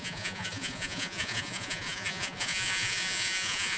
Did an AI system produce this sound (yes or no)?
yes